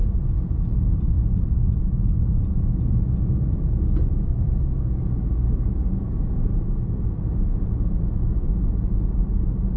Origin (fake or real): fake